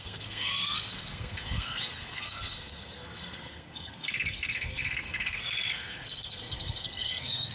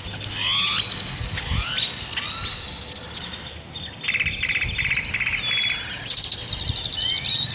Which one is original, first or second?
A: second